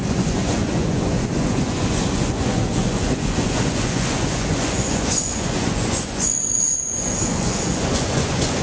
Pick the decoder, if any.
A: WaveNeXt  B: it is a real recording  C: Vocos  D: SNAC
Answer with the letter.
C